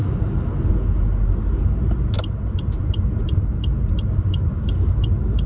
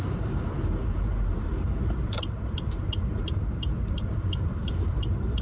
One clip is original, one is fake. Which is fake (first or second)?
second